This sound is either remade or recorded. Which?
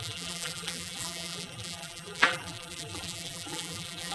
remade